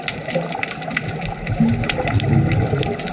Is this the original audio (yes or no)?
yes